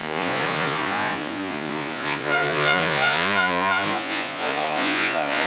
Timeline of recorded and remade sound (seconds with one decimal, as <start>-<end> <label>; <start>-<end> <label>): 0.0-5.5 remade